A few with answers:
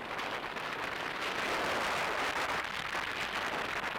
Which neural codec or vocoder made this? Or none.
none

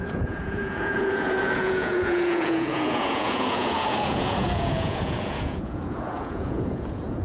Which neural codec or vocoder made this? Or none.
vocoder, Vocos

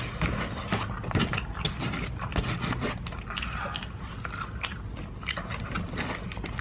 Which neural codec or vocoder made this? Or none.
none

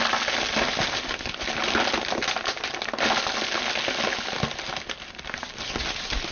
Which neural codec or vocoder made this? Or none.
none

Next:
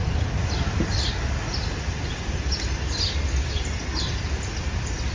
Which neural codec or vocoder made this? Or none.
none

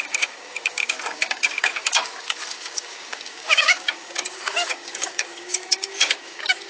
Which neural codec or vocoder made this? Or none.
codec, DAC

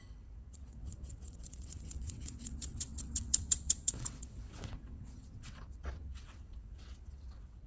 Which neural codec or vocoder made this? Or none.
vocoder, WaveNeXt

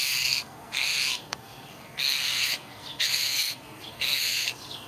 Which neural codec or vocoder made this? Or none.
codec, SNAC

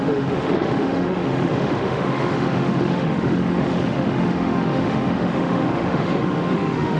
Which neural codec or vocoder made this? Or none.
autoencoder, DAC-VAE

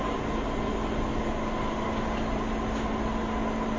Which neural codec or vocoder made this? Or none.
none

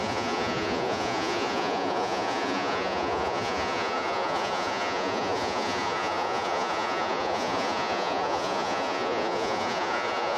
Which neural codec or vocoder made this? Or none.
vocoder, Vocos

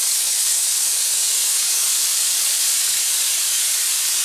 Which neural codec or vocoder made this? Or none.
codec, DAC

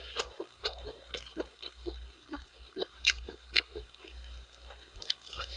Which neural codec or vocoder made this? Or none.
codec, SNAC